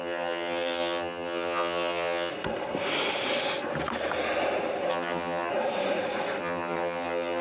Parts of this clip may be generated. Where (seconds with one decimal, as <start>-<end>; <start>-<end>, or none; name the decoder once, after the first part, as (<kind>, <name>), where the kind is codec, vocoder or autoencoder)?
0.0-2.3 (vocoder, HiFi-GAN); 4.9-5.5; 6.4-7.4